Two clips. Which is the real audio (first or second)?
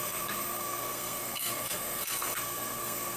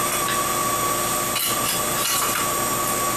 second